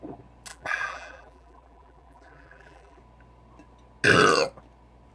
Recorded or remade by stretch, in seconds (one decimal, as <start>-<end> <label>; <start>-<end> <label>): 0.0-0.5 recorded; 0.5-3.0 remade; 3.0-5.1 recorded